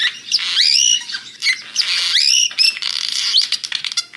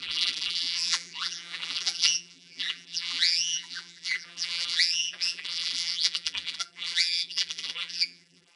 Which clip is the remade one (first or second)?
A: second